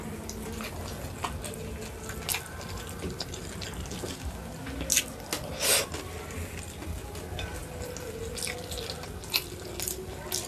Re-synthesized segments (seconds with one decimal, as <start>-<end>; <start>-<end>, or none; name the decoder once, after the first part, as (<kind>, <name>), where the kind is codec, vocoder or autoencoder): none